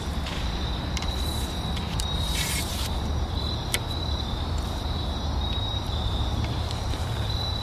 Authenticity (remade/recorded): remade